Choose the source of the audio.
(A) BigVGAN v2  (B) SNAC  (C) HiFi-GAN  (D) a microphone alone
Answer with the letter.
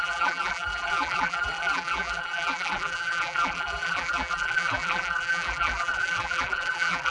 A